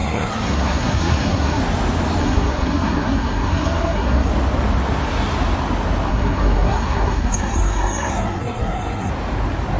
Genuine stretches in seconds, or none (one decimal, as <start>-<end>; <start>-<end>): 1.6-2.2; 4.3-6.1; 9.1-9.8